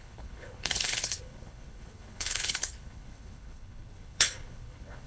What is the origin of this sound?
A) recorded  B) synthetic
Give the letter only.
B